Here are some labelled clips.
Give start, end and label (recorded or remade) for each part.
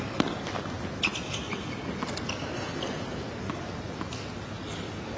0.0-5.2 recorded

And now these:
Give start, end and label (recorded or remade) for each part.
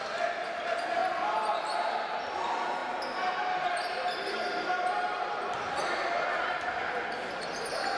0.0-8.0 recorded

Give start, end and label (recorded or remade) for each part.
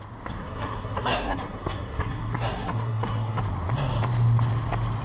0.0-0.4 recorded; 0.4-3.4 remade; 3.4-5.0 recorded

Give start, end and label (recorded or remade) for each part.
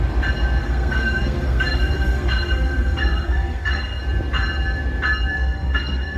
0.0-0.6 recorded; 0.6-4.0 remade; 4.0-5.3 recorded; 5.3-6.2 remade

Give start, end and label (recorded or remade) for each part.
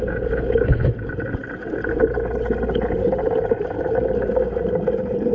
0.0-5.3 recorded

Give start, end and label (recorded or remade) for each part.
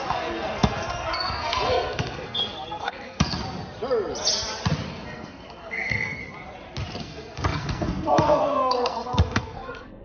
0.0-3.4 remade; 3.4-4.9 recorded; 4.9-6.2 remade; 6.2-7.0 recorded; 7.0-10.0 remade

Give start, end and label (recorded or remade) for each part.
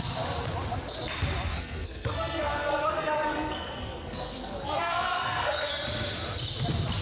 0.0-1.5 recorded; 1.5-5.7 remade; 5.7-7.0 recorded